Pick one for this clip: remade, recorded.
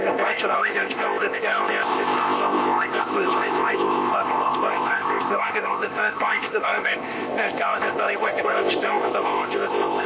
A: remade